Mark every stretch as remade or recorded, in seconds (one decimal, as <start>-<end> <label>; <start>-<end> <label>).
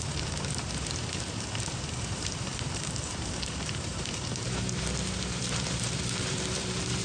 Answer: 0.0-7.0 remade